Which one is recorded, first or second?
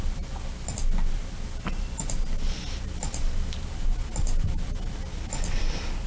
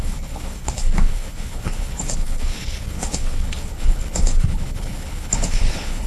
first